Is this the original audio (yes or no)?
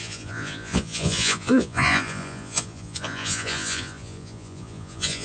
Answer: no